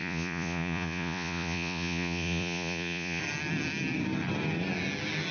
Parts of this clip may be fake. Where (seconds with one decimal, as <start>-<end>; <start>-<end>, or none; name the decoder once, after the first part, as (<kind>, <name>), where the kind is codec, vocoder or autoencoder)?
0.0-3.2 (vocoder, Vocos)